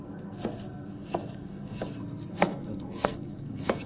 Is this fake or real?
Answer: fake